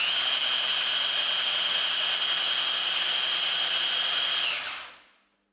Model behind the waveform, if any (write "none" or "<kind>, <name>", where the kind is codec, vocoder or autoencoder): none